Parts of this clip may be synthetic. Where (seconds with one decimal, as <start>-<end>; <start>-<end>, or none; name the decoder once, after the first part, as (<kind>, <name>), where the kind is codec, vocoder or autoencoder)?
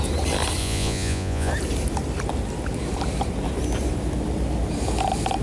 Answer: 0.6-1.5 (vocoder, Vocos)